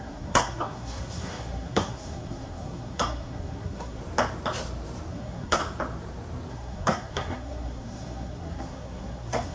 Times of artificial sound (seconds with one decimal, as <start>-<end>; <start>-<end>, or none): 0.0-4.0; 5.1-5.6; 6.5-9.5